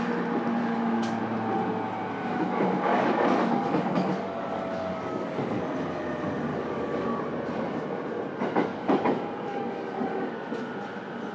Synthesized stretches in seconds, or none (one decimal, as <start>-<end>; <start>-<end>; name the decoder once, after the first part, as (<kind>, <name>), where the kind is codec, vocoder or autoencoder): 0.6-1.2 (codec, DAC); 2.9-5.6; 6.5-7.2; 8.7-10.5